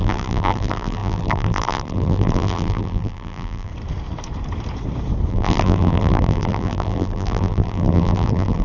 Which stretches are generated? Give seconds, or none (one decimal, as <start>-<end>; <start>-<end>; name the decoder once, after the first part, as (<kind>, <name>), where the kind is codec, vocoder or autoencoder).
0.0-3.7 (vocoder, BigVGAN v2); 5.3-8.6